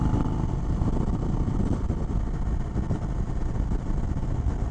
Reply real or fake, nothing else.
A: real